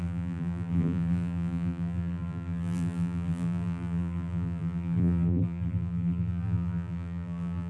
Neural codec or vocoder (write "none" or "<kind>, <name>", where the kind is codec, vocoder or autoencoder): vocoder, BigVGAN v2